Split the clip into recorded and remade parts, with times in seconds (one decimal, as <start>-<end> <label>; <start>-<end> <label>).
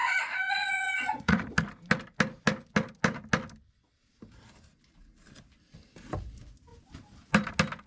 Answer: 0.0-1.4 remade; 1.4-7.9 recorded